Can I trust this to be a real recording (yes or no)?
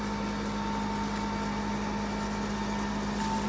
no